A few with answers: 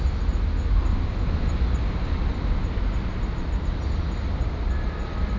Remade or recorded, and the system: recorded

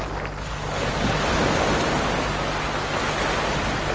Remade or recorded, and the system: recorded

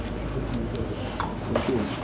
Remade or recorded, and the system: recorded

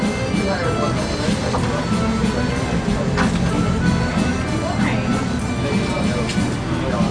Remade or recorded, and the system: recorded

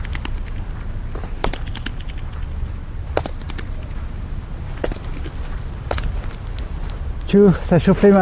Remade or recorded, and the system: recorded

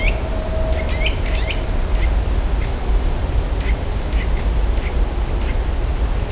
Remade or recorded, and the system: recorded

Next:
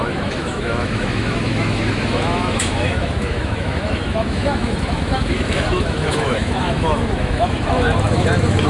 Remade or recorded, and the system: remade, autoencoder, DAC-VAE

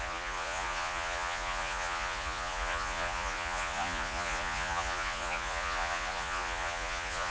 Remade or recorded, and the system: remade, vocoder, Vocos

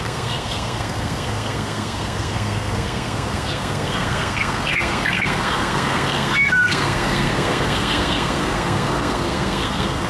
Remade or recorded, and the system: remade, codec, SNAC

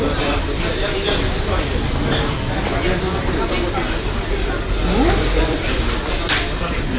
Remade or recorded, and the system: recorded